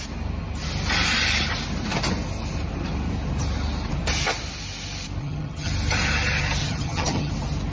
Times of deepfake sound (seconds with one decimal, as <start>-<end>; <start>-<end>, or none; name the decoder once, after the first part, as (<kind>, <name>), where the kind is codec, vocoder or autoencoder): 5.2-5.7 (vocoder, HiFi-GAN); 6.6-7.3